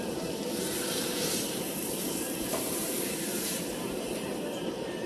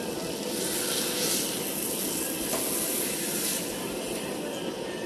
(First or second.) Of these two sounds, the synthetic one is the first